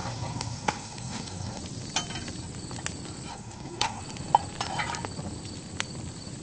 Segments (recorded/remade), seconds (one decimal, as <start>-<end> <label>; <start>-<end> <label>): 0.0-1.6 remade; 1.6-3.3 recorded; 3.3-4.0 remade; 4.0-6.4 recorded